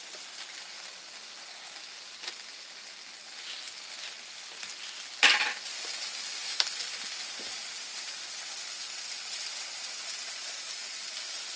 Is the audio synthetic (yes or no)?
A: no